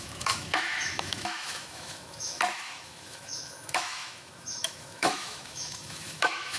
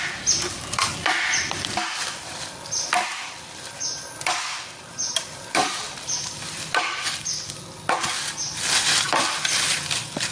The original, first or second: second